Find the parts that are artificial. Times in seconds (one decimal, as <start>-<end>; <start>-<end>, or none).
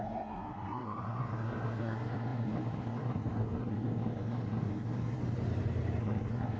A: 0.0-5.2; 6.0-6.6